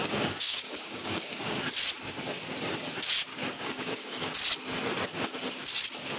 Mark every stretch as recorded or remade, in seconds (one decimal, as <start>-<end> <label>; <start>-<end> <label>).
0.0-1.6 remade; 1.6-3.3 recorded; 3.3-4.2 remade; 4.2-6.2 recorded